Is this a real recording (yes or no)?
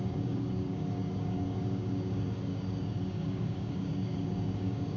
no